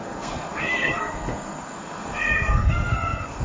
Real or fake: fake